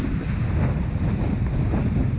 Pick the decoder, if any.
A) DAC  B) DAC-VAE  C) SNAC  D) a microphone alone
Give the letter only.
D